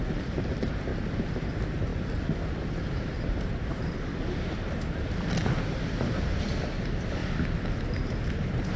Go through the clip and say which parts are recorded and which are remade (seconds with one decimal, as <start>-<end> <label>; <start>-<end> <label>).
0.0-4.1 remade; 4.1-5.6 recorded; 5.6-7.2 remade; 7.2-7.8 recorded; 7.8-8.8 remade